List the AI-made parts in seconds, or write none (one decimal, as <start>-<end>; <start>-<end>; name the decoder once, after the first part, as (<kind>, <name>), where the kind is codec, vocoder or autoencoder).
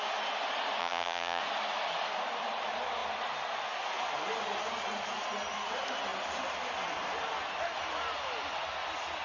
0.8-1.4 (vocoder, HiFi-GAN)